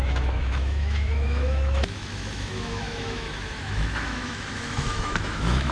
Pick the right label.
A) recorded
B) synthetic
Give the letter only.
B